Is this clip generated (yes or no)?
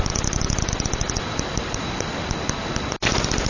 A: no